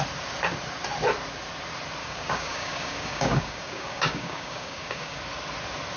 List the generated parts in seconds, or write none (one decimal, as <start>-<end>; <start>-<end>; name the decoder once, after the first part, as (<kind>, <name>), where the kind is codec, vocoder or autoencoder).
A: 2.0-5.2 (codec, DAC)